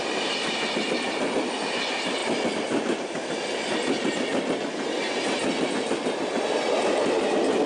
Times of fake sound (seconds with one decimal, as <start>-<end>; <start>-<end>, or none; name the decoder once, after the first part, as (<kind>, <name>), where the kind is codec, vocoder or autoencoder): none